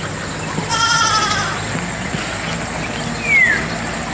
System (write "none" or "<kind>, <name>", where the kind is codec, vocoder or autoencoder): none